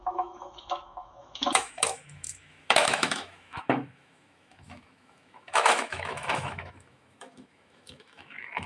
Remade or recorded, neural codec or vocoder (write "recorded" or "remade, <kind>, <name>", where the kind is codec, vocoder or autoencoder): remade, autoencoder, DAC-VAE